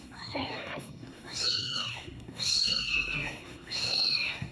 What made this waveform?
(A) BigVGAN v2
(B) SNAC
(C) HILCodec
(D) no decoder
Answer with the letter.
B